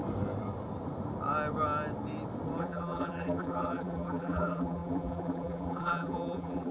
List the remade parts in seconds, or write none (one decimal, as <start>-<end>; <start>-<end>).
2.6-6.7